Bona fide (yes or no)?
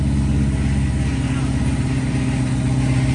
yes